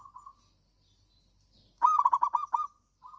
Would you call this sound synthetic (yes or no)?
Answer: no